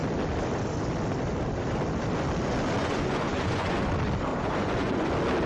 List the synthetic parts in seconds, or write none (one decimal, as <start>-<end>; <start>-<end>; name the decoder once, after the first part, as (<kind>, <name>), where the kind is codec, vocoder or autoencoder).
2.8-3.9 (vocoder, Vocos); 4.3-5.1